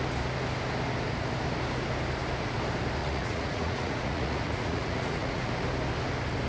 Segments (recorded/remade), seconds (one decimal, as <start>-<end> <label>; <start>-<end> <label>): 0.0-3.0 recorded; 3.0-5.5 remade; 5.5-6.5 recorded